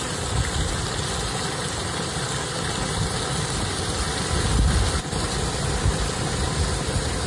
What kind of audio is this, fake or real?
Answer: real